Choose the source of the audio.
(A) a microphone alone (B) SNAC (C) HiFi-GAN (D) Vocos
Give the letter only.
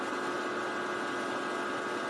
A